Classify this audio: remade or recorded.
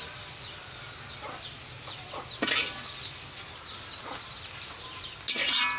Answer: recorded